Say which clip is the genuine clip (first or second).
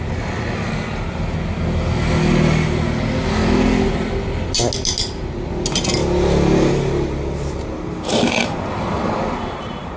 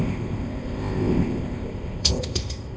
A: first